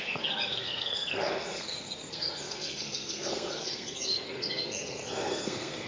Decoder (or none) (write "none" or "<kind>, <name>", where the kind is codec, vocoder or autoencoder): codec, SNAC